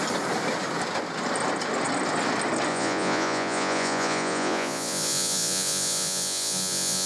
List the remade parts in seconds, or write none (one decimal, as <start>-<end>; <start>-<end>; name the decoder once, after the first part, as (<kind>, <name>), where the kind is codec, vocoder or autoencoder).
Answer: 2.7-7.1 (vocoder, Vocos)